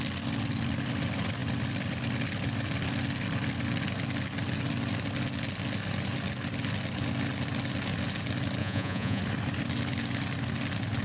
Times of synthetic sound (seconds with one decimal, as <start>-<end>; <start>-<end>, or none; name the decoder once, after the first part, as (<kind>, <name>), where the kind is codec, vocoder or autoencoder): 8.6-9.2 (vocoder, Vocos)